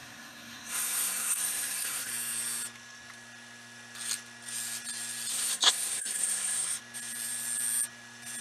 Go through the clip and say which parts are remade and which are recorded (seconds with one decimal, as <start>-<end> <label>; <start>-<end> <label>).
0.0-2.1 remade; 2.1-5.3 recorded; 5.3-6.8 remade; 6.8-8.4 recorded